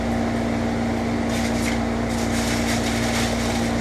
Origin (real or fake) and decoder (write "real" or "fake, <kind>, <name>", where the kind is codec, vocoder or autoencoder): real